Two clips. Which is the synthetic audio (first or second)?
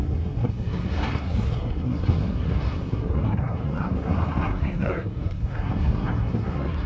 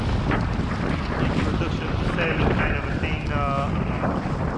first